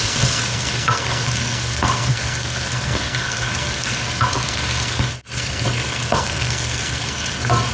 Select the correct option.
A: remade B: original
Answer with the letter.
A